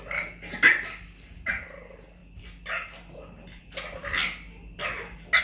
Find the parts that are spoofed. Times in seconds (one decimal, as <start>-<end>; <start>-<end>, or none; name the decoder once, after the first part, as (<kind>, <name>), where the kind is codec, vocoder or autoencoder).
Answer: none